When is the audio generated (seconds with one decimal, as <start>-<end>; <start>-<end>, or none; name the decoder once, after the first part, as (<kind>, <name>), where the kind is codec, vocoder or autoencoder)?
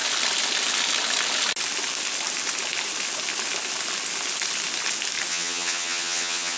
5.3-6.6 (vocoder, HiFi-GAN)